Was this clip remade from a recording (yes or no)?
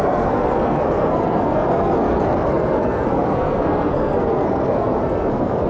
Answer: yes